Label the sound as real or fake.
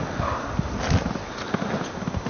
real